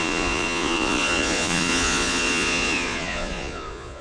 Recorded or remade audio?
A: remade